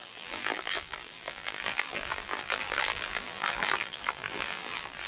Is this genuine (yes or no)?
no